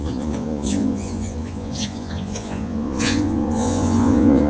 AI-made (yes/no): yes